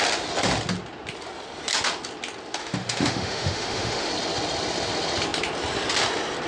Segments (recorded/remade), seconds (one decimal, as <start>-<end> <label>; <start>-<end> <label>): 0.0-2.6 recorded; 2.6-4.1 remade; 4.1-6.5 recorded